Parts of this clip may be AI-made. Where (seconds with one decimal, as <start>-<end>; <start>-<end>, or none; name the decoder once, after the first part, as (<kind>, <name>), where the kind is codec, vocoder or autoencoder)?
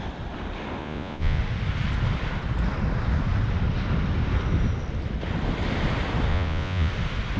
0.8-1.4 (vocoder, Vocos); 6.3-6.9